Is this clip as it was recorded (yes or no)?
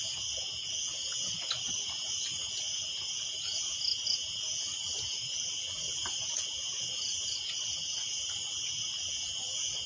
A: no